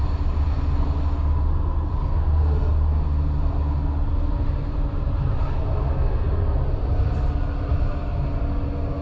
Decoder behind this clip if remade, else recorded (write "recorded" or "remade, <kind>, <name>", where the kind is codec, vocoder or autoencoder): recorded